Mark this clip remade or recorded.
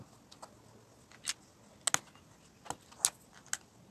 recorded